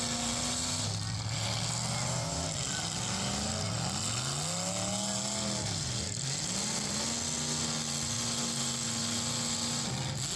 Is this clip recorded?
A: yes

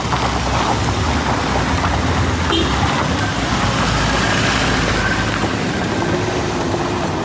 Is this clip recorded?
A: yes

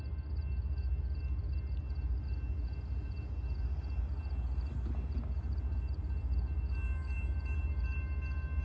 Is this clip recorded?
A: yes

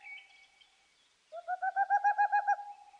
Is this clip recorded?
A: yes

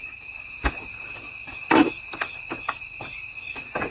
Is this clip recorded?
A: yes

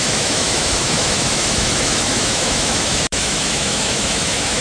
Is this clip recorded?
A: no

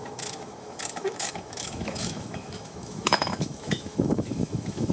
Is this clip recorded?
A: no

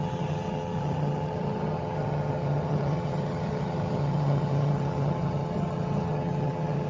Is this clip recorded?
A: no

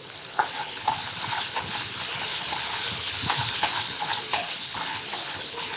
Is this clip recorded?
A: no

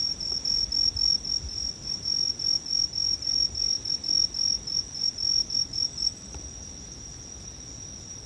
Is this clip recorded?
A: yes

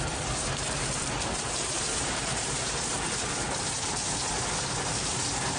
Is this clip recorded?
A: no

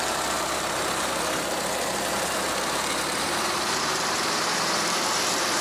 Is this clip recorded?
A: no